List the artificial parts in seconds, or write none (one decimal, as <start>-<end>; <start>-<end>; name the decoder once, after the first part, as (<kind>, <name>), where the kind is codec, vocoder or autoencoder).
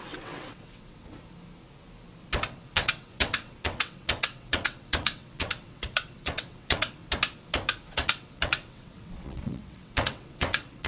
0.0-1.1 (vocoder, WaveNeXt); 2.7-7.0; 7.9-10.9